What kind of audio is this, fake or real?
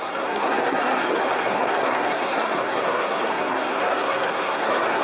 fake